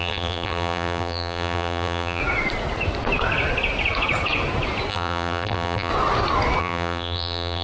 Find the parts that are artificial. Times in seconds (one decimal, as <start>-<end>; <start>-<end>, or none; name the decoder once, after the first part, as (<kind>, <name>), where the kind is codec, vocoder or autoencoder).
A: 0.0-2.2 (vocoder, BigVGAN v2); 4.9-5.9; 6.6-7.6